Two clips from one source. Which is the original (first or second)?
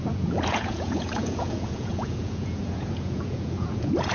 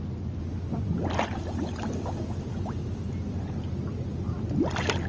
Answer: second